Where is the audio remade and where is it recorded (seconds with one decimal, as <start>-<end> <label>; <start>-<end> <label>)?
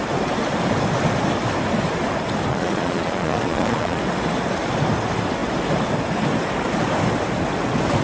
0.0-2.5 recorded; 2.5-4.0 remade; 4.0-8.0 recorded